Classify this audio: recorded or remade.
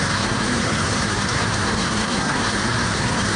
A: remade